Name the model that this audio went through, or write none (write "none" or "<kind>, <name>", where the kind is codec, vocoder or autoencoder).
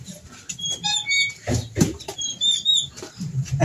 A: vocoder, BigVGAN v2